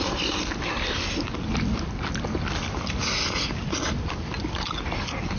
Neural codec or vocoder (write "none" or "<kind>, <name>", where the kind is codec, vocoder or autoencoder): none